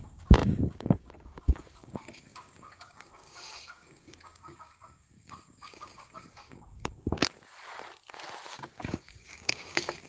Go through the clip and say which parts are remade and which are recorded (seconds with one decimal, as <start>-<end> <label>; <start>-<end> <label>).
0.0-7.2 remade; 7.2-8.5 recorded; 8.5-10.1 remade